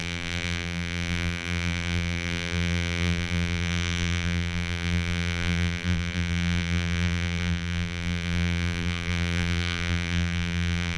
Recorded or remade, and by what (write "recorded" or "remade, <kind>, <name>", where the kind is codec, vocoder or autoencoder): remade, vocoder, BigVGAN v2